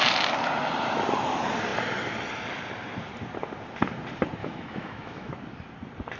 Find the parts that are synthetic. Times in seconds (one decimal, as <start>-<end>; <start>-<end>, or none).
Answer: 4.4-5.3